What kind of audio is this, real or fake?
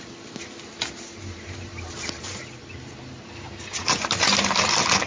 real